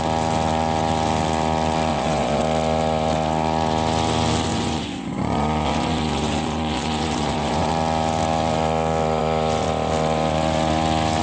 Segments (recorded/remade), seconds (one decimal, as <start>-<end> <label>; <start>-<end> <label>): 0.0-1.9 recorded; 1.9-2.4 remade; 2.4-4.5 recorded; 4.5-7.7 remade; 7.7-11.2 recorded